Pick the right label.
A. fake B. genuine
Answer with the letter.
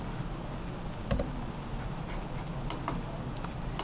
B